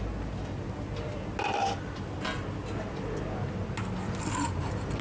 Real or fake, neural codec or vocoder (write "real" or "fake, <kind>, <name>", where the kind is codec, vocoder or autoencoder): real